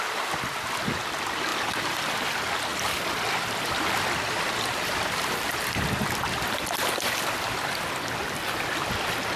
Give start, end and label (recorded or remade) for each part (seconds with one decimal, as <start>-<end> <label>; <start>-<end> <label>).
0.0-1.5 recorded; 1.5-2.2 remade; 2.2-2.7 recorded; 2.7-7.9 remade; 7.9-9.4 recorded